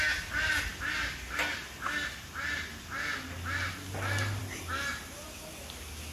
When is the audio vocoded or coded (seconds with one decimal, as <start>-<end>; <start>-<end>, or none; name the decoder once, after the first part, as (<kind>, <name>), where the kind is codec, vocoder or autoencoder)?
none